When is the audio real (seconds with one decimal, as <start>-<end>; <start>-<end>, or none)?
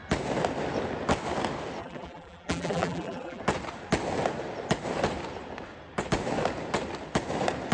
0.0-1.8; 3.4-7.7